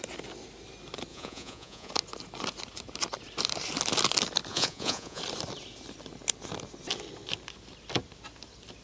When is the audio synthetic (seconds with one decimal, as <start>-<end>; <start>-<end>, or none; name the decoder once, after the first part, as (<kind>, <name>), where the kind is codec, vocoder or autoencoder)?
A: 1.1-1.9 (vocoder, Vocos); 4.5-5.2